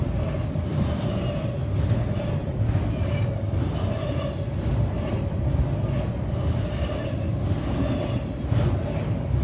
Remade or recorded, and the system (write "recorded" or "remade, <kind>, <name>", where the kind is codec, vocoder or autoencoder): recorded